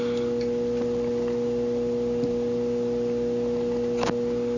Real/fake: real